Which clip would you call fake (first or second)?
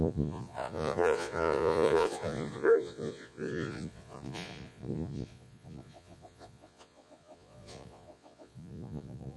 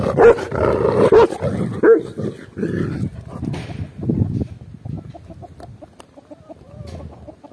first